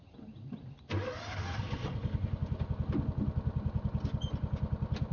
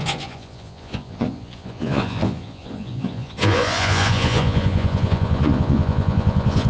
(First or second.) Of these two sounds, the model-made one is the second